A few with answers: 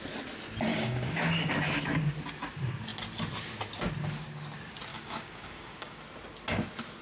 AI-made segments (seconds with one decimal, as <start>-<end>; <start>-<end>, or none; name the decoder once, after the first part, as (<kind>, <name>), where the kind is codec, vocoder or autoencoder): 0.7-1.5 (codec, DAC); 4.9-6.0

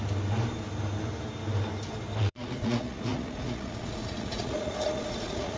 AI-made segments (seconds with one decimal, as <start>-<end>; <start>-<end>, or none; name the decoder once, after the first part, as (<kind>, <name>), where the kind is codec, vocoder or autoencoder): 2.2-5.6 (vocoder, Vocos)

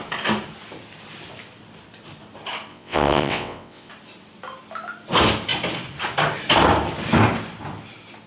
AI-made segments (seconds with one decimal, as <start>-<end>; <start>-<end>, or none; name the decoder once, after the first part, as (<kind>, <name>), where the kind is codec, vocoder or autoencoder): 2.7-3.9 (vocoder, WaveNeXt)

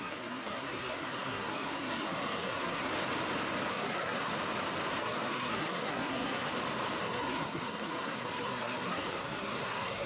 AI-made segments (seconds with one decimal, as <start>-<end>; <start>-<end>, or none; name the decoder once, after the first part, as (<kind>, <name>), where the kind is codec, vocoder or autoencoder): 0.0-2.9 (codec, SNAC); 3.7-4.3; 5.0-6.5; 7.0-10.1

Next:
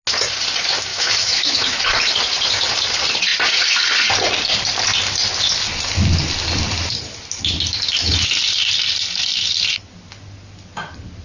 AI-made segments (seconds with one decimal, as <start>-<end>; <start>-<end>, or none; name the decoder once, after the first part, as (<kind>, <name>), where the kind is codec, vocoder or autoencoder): 0.9-1.8 (autoencoder, DAC-VAE)